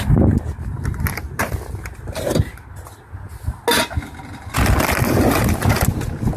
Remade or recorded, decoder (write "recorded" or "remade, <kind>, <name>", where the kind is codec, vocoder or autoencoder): recorded